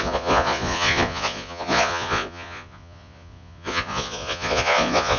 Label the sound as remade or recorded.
remade